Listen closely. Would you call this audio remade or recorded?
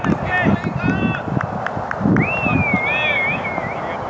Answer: recorded